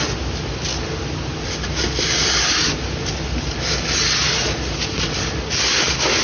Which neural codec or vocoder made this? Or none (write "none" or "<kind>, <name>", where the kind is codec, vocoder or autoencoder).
none